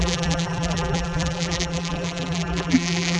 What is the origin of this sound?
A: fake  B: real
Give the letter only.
A